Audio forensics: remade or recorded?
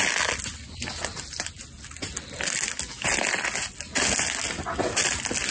recorded